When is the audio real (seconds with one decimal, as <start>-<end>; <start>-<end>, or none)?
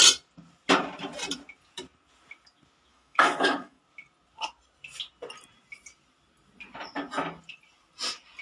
0.0-2.9; 3.8-8.4